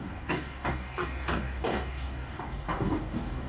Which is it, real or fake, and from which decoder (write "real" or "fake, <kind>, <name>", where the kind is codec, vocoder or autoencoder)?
fake, codec, DAC